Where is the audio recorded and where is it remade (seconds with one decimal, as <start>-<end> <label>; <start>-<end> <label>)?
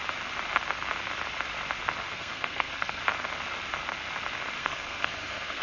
0.0-2.1 recorded; 2.1-3.0 remade; 3.0-4.6 recorded; 4.6-5.6 remade